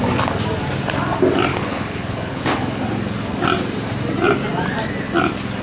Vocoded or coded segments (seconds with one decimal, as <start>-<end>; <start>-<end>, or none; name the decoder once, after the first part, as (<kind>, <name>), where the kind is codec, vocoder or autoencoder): 1.5-2.8 (codec, HILCodec)